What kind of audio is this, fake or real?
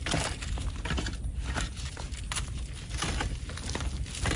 real